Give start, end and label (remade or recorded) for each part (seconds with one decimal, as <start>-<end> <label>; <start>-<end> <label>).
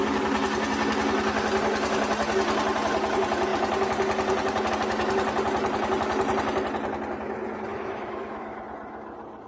0.0-7.7 recorded; 7.7-8.6 remade; 8.6-9.5 recorded